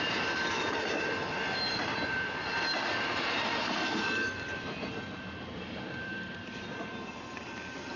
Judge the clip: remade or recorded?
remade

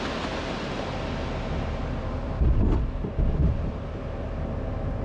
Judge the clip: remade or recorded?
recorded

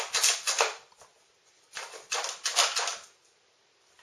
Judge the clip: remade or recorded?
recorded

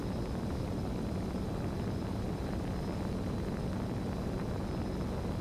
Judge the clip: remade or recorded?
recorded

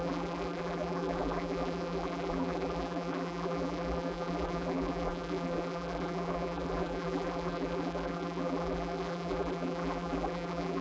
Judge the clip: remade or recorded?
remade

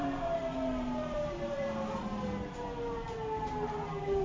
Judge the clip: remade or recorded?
remade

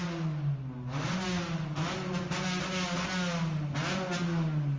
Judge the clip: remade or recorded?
recorded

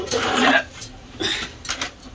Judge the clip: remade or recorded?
remade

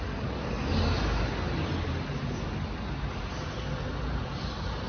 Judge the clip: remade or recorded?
recorded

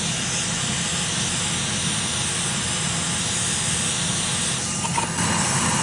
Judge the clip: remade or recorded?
recorded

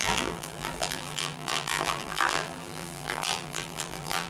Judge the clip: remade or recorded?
remade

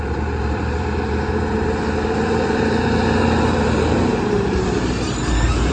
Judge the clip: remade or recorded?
remade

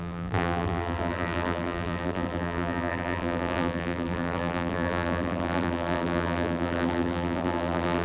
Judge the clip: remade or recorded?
remade